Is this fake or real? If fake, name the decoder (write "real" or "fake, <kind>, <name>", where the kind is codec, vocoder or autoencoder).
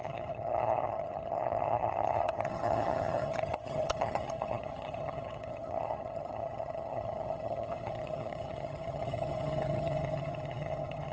fake, vocoder, HiFi-GAN